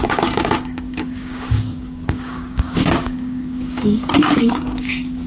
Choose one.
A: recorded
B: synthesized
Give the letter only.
B